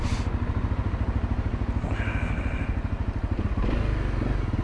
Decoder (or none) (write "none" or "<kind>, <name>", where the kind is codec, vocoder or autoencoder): none